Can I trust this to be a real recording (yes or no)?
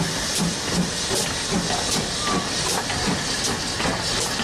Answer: yes